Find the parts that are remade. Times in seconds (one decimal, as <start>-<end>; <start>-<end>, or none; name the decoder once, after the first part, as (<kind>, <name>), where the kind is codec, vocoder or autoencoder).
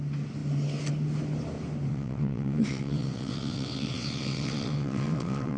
1.9-5.6 (vocoder, WaveNeXt)